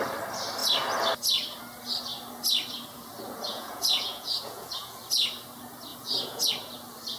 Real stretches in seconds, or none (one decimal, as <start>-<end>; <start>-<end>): 0.0-3.5; 5.0-5.9; 6.5-7.2